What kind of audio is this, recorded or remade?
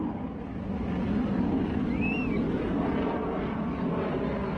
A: recorded